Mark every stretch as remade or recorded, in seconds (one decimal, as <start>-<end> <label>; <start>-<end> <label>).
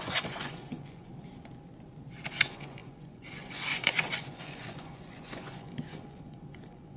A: 0.0-1.1 remade; 1.1-2.3 recorded; 2.3-7.0 remade